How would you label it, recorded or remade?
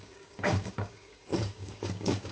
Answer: remade